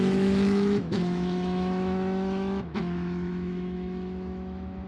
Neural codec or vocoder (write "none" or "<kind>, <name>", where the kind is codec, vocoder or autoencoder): autoencoder, DAC-VAE